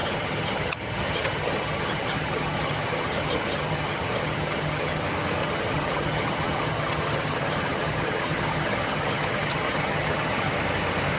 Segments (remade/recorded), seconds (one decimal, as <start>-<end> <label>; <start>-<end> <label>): 0.0-5.0 remade; 5.0-5.4 recorded; 5.4-10.5 remade; 10.5-11.2 recorded